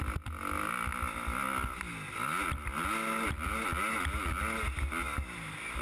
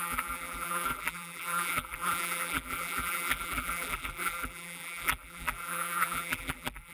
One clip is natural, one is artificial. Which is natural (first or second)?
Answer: first